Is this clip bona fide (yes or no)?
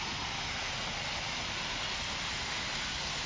yes